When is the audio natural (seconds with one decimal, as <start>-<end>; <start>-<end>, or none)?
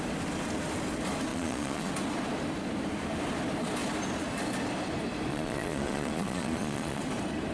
0.0-1.3; 1.9-5.3; 7.0-7.5